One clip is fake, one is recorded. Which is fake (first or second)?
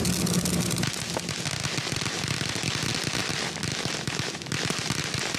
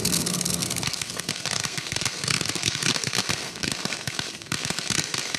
second